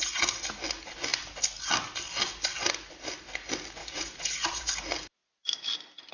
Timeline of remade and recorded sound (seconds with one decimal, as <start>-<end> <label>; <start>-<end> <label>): 0.0-3.8 recorded; 3.8-4.7 remade; 4.7-6.1 recorded